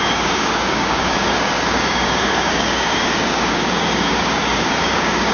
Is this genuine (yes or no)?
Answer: no